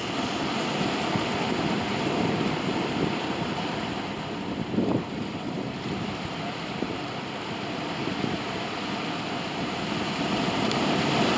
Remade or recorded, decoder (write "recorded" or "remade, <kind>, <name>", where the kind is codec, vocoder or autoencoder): remade, vocoder, BigVGAN v2